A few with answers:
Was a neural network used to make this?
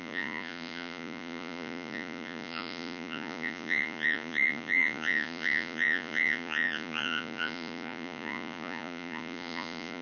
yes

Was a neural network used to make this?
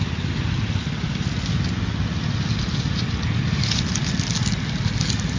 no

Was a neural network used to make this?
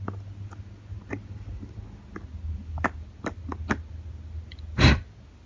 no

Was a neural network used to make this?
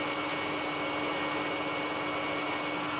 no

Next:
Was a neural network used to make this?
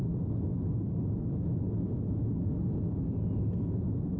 no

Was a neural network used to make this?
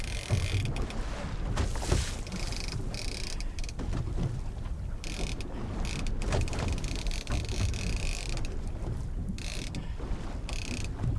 no